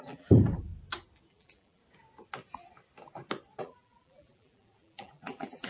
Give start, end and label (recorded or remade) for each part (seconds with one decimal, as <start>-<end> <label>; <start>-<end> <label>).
0.0-0.7 remade; 0.7-1.3 recorded; 1.3-1.8 remade; 1.8-3.6 recorded; 3.6-5.7 remade

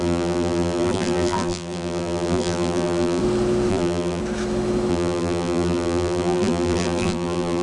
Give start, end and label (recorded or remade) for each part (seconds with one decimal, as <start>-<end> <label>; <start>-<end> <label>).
0.0-3.2 remade; 3.2-3.7 recorded; 3.7-4.2 remade; 4.2-4.9 recorded; 4.9-7.6 remade

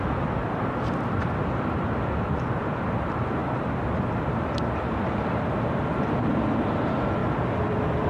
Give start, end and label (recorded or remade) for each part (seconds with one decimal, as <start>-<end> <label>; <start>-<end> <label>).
0.0-0.4 recorded; 0.4-2.7 remade; 2.7-3.4 recorded; 3.4-4.2 remade; 4.2-7.2 recorded; 7.2-8.1 remade

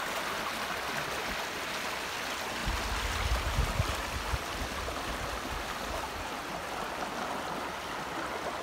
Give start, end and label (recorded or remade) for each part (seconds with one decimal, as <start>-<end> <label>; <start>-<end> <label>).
0.0-8.6 recorded

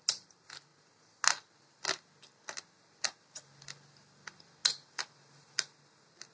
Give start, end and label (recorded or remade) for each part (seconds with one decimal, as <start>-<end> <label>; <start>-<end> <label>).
0.0-6.3 recorded